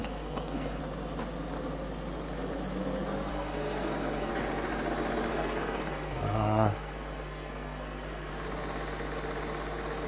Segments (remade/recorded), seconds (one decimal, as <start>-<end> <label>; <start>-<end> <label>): 0.0-0.8 remade; 0.8-3.3 recorded; 3.3-4.3 remade; 4.3-5.3 recorded; 5.3-8.3 remade; 8.3-10.1 recorded